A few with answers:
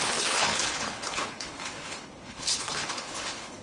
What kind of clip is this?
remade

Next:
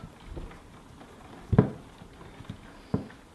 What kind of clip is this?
recorded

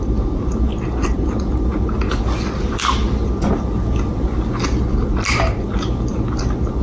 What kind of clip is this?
recorded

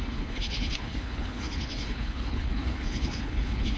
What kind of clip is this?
remade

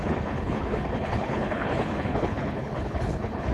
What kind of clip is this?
remade